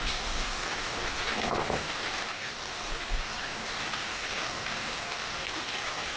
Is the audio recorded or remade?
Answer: remade